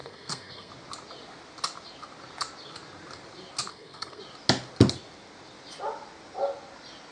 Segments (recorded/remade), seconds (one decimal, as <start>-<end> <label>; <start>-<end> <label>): 0.0-0.7 remade; 0.7-3.7 recorded; 3.7-4.2 remade; 4.2-7.1 recorded